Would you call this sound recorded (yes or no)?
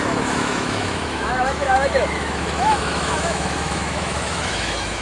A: no